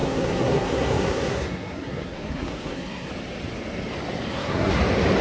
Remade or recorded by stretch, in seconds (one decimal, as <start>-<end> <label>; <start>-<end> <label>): 0.0-3.1 remade; 3.1-4.3 recorded; 4.3-4.8 remade; 4.8-5.2 recorded